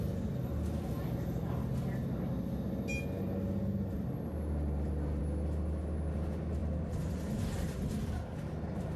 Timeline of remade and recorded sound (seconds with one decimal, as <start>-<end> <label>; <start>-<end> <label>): 0.0-6.6 recorded; 6.6-8.1 remade; 8.1-9.0 recorded